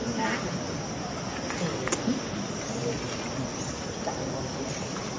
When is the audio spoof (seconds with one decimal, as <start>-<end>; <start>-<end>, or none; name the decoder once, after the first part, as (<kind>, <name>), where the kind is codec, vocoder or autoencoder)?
3.5-4.1 (vocoder, BigVGAN v2)